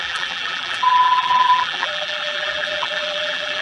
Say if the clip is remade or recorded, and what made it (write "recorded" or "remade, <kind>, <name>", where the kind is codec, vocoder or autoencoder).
remade, vocoder, BigVGAN v2